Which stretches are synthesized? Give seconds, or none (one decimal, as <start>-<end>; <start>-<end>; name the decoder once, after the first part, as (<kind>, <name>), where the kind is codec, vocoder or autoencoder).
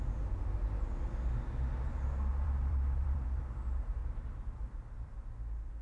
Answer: 2.3-3.4 (vocoder, BigVGAN v2); 4.0-5.3